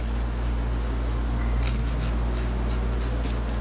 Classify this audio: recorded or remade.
recorded